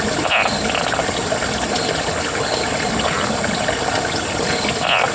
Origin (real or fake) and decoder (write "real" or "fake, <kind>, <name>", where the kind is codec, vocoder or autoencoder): real